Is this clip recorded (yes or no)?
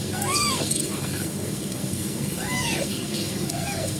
no